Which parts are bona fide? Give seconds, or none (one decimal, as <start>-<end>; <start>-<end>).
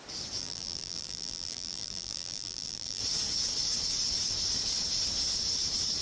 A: 0.0-0.4; 3.0-6.0